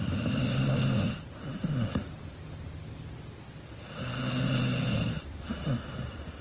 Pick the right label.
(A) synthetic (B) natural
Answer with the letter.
B